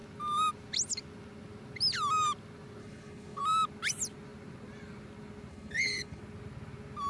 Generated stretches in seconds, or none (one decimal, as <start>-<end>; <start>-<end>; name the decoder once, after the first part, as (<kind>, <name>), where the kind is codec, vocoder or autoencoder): 2.8-3.4 (codec, HILCodec); 5.5-6.2